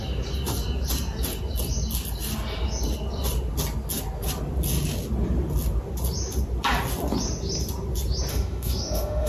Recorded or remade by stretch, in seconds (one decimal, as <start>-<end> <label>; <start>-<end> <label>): 0.0-8.3 recorded; 8.3-9.3 remade